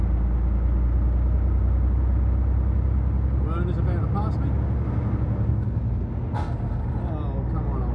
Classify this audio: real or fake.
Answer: real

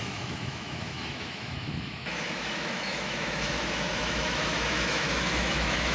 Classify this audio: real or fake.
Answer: fake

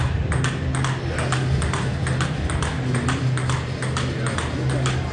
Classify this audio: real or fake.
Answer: real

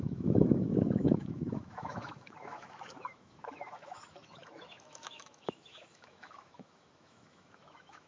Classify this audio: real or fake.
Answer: fake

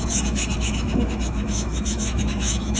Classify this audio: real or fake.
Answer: fake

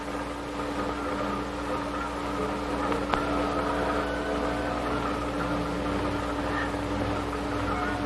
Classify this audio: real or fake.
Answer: real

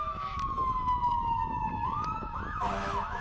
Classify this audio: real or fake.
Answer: fake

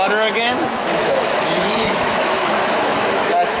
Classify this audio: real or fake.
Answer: fake